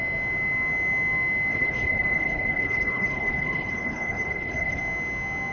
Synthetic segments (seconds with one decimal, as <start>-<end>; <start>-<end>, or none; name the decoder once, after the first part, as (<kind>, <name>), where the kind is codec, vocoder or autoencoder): 1.5-4.8 (codec, HILCodec)